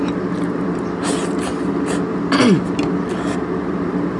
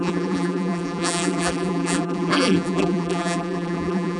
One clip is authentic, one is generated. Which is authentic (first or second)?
first